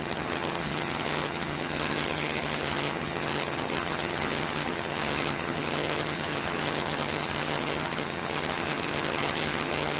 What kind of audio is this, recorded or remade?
remade